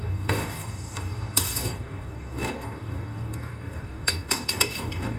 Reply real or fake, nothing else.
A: fake